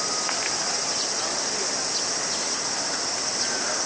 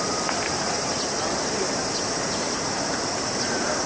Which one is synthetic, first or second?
second